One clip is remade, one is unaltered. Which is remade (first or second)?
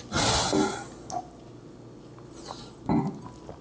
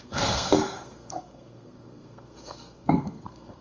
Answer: second